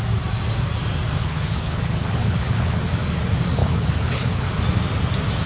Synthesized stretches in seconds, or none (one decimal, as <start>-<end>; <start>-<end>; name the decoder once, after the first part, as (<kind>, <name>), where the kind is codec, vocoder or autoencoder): 1.2-2.8 (codec, HILCodec); 3.6-4.5